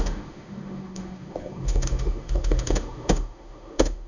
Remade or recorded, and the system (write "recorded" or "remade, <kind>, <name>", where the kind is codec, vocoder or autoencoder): remade, autoencoder, DAC-VAE